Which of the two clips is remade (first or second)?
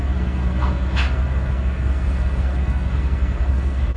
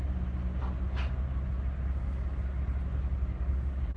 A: first